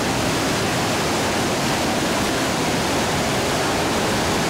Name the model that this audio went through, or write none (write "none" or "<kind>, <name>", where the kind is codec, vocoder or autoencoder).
none